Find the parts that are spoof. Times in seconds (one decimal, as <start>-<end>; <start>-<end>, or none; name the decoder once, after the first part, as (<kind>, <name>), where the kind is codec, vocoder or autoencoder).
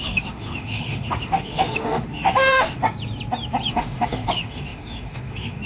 0.0-2.8 (autoencoder, DAC-VAE); 3.7-5.7